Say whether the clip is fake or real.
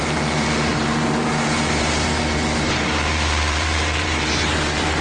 fake